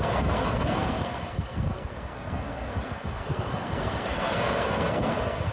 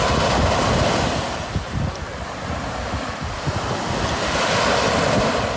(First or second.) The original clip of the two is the second